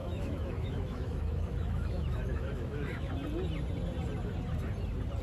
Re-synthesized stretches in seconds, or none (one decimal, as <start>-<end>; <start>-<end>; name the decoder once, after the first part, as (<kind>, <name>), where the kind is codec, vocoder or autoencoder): 0.0-3.1 (autoencoder, DAC-VAE)